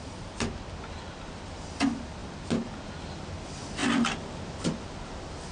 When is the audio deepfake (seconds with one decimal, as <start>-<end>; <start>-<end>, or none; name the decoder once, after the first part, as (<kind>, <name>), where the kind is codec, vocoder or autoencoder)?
3.8-4.4 (vocoder, BigVGAN v2)